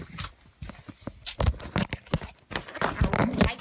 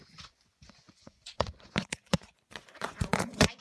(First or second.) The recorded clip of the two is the first